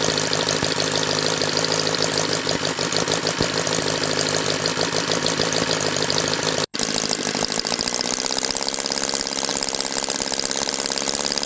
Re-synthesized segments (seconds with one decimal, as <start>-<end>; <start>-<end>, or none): none